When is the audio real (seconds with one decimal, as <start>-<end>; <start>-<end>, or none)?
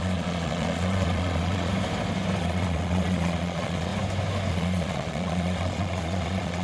1.7-2.4; 3.9-4.5